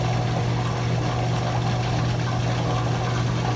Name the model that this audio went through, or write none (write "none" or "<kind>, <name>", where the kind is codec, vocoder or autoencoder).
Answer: none